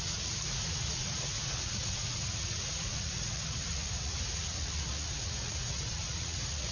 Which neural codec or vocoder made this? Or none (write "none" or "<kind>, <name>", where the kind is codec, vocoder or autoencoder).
vocoder, Vocos